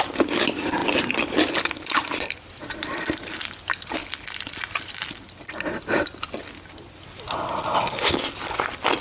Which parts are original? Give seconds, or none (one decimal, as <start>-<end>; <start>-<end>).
0.0-0.8; 3.1-4.0; 6.5-9.0